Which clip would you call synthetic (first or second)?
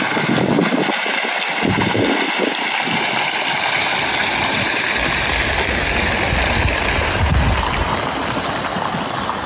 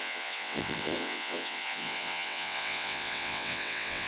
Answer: second